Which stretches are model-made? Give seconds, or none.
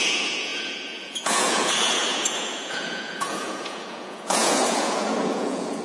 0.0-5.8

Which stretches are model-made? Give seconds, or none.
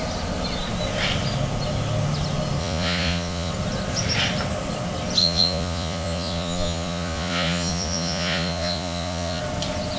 2.6-3.5; 5.2-9.4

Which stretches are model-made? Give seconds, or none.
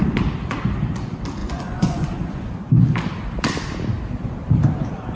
1.4-2.5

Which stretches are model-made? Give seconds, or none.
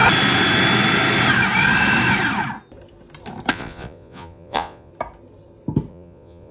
3.5-4.9; 5.9-6.5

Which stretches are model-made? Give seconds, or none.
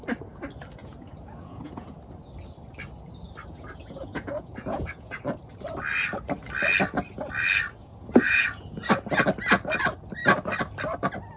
0.8-2.0; 3.5-5.2; 7.8-8.9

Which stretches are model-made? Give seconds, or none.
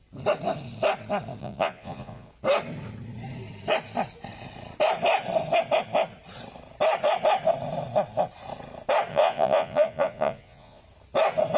1.4-2.3; 9.1-10.8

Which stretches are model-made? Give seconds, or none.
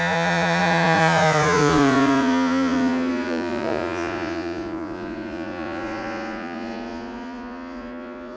0.0-8.4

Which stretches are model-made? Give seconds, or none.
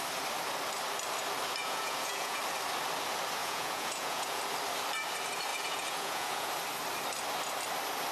1.6-2.4; 3.4-4.4; 5.5-6.5